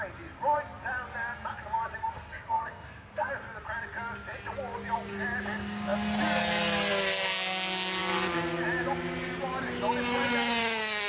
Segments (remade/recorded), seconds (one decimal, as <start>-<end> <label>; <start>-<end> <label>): 0.0-2.0 recorded; 2.0-3.3 remade; 3.3-11.1 recorded